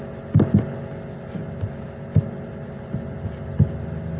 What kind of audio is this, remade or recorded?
recorded